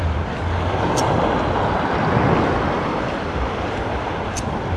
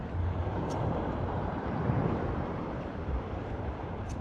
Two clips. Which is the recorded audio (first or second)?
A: first